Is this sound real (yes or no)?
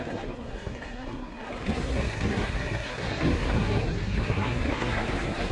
no